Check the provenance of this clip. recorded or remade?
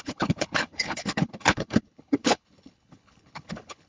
remade